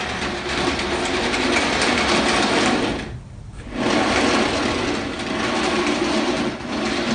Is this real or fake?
real